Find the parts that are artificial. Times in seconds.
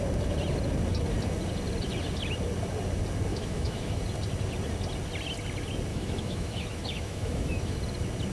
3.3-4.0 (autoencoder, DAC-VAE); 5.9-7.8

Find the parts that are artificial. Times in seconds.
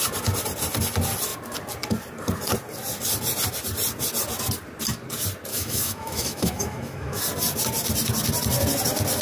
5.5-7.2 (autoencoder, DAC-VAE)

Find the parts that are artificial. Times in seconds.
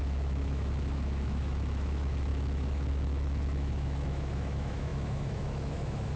0.0-6.2 (autoencoder, DAC-VAE)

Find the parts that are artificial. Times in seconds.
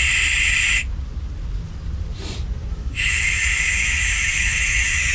2.7-5.1 (autoencoder, DAC-VAE)